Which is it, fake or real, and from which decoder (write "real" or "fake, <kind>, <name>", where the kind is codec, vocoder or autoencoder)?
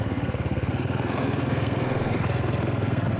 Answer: fake, codec, SNAC